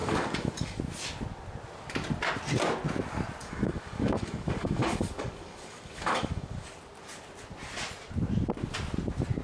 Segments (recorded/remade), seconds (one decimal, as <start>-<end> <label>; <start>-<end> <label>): 0.0-0.8 remade; 0.8-3.4 recorded; 3.4-6.7 remade; 6.7-9.4 recorded